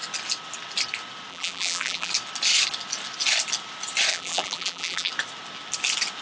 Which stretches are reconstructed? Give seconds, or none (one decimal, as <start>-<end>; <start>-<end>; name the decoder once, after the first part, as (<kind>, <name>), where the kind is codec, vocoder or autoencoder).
1.3-2.1 (vocoder, BigVGAN v2); 4.1-5.1